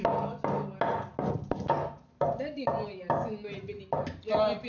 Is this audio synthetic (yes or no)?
no